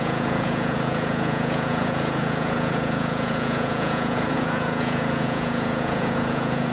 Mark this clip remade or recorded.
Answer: remade